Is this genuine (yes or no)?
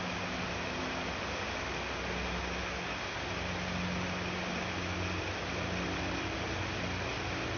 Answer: yes